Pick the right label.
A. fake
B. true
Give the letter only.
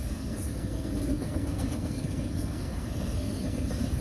A